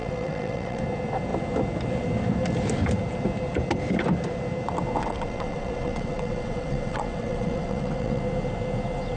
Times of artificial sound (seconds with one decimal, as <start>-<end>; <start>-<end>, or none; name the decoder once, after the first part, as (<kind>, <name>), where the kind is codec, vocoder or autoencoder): 0.0-0.8 (vocoder, WaveNeXt); 5.0-8.2